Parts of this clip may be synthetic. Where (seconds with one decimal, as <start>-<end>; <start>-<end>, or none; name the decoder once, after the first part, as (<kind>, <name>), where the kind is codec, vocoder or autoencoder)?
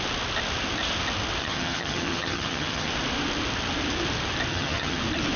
1.4-2.9 (vocoder, HiFi-GAN); 4.5-5.0